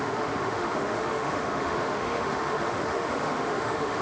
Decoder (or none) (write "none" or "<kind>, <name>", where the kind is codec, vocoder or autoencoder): autoencoder, DAC-VAE